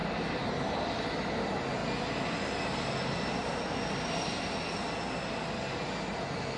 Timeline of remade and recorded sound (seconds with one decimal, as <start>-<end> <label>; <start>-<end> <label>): 0.0-0.5 remade; 0.5-6.6 recorded